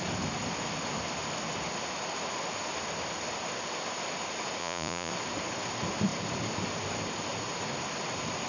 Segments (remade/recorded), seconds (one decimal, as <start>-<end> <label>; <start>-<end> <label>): 0.0-4.6 recorded; 4.6-5.1 remade; 5.1-8.5 recorded